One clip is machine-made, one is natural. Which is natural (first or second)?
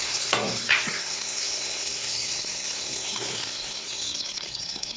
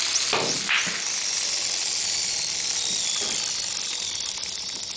second